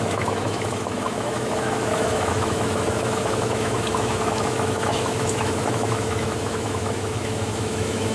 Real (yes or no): no